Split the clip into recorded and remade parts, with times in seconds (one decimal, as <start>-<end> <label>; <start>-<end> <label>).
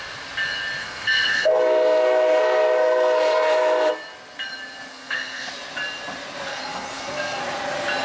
0.0-0.8 recorded; 0.8-3.9 remade; 3.9-4.9 recorded; 4.9-5.5 remade; 5.5-6.5 recorded; 6.5-7.4 remade; 7.4-8.0 recorded